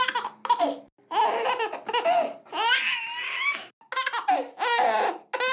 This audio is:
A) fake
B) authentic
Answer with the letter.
B